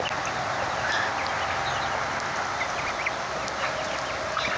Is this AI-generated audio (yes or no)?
no